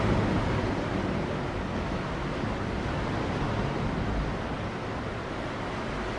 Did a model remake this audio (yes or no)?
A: no